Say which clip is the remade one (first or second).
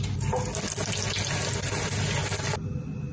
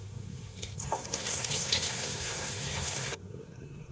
second